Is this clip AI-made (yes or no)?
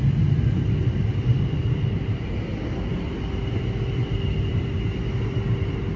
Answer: no